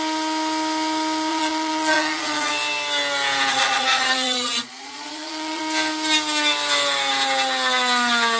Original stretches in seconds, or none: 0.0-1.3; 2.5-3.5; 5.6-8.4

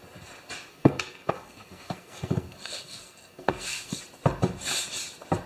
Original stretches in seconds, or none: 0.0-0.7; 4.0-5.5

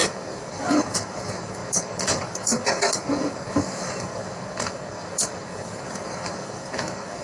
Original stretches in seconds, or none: none

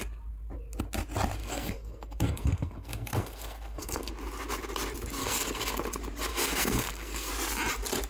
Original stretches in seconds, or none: 0.0-1.4; 4.1-5.2; 5.8-6.3; 7.3-8.1

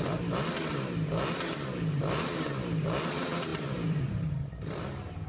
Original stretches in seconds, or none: 0.0-3.5; 4.0-5.3